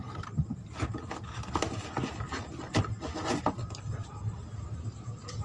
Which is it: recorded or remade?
recorded